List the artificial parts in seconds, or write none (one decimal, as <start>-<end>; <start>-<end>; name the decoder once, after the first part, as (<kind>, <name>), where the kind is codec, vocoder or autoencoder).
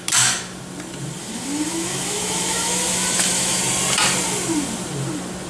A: 1.2-3.6 (autoencoder, DAC-VAE)